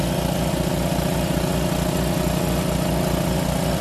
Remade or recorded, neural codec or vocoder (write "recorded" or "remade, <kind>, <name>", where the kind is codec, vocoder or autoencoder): recorded